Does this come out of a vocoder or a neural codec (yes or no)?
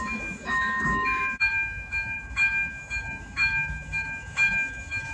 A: yes